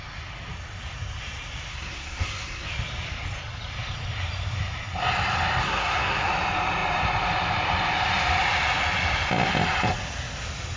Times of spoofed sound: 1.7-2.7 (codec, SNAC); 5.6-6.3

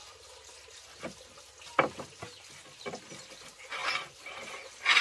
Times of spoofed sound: none

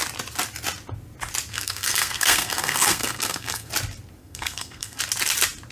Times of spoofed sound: 1.5-3.7 (codec, SNAC); 4.2-5.0

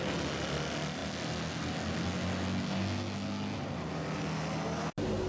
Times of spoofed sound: none